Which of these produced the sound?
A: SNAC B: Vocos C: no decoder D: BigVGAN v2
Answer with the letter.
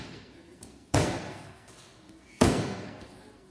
A